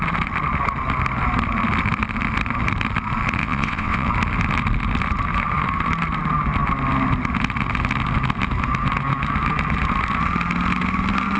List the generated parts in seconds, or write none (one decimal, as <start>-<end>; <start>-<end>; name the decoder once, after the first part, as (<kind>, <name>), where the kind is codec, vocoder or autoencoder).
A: 3.4-4.1 (vocoder, WaveNeXt)